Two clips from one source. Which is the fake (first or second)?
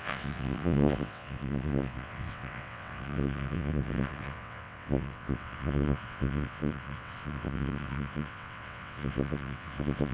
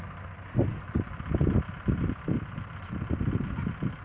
first